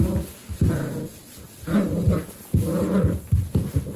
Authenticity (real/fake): real